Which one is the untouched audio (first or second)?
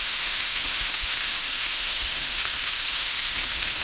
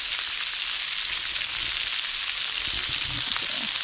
second